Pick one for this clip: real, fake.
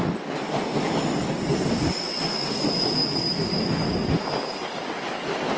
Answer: real